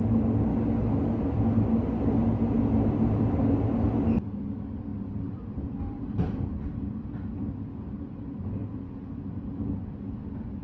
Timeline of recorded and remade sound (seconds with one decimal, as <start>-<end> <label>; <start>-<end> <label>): 0.0-4.9 recorded; 4.9-7.7 remade; 7.7-8.6 recorded; 8.6-9.8 remade; 9.8-10.6 recorded